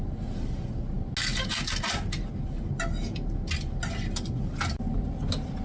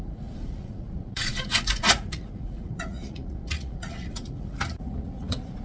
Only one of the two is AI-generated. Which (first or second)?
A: second